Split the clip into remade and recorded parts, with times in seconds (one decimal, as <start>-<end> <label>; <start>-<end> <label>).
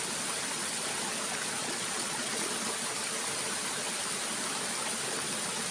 0.0-1.6 recorded; 1.6-2.5 remade; 2.5-5.7 recorded